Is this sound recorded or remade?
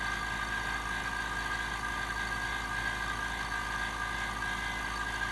recorded